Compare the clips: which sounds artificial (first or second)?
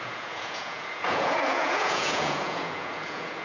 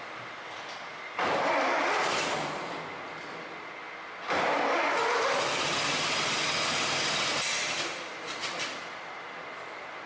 first